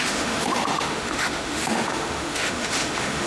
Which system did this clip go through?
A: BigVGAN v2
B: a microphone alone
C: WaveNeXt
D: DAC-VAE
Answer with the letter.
D